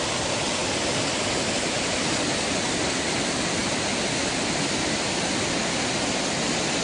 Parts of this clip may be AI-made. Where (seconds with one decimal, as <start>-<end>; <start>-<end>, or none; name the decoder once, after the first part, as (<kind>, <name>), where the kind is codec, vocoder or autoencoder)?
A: none